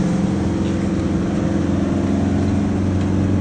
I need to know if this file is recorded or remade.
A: recorded